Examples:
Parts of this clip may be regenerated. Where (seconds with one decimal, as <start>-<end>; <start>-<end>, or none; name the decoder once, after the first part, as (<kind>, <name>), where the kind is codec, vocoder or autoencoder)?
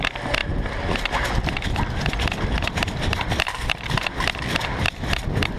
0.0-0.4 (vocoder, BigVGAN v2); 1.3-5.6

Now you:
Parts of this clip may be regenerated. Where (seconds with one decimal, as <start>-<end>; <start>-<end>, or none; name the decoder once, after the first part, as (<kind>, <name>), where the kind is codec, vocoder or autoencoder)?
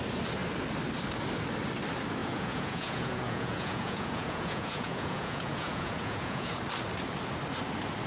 2.2-6.6 (vocoder, Vocos)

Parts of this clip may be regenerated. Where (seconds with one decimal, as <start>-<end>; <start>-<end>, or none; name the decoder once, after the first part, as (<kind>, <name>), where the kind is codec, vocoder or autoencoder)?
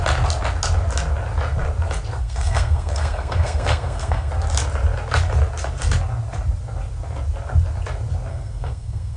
2.2-4.3 (codec, SNAC); 8.3-9.2